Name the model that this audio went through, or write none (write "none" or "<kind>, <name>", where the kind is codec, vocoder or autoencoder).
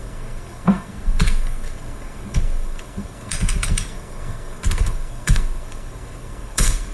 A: codec, SNAC